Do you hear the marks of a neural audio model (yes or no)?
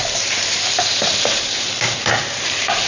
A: yes